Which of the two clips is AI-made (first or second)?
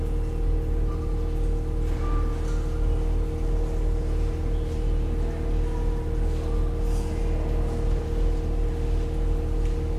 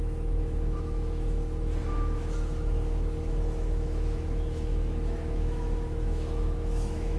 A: second